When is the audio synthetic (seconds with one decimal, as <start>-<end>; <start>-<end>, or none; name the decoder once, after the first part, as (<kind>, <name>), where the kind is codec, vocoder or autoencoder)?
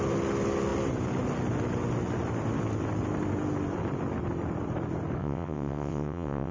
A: 5.2-6.5 (vocoder, WaveNeXt)